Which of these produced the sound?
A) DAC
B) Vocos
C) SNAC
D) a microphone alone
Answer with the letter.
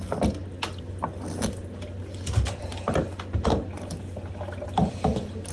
D